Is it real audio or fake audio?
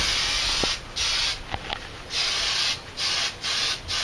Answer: real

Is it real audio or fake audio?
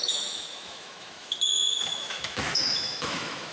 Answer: fake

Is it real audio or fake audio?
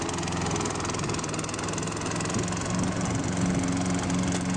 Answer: real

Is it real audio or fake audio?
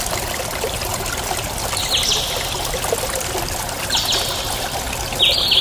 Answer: real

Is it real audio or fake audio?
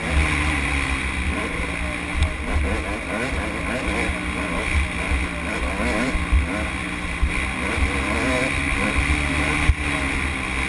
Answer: real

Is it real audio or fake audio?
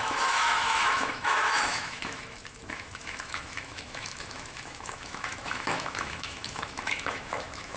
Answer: fake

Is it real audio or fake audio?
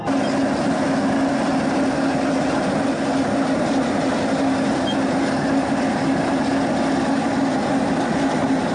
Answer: real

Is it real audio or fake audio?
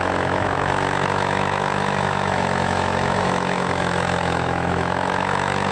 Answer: fake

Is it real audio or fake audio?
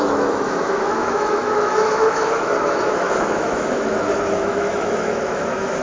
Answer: fake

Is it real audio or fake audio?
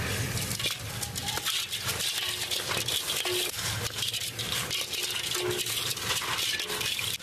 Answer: real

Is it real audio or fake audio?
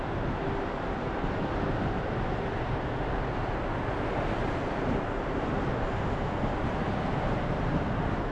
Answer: real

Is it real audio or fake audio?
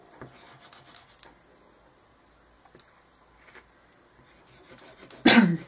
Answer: real